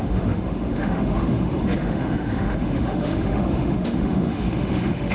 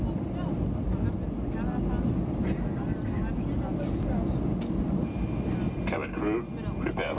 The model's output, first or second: first